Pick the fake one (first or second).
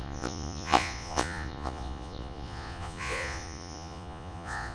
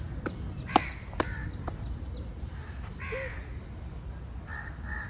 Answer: first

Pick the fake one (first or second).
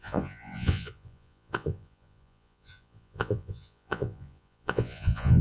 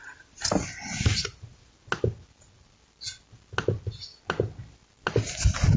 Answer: first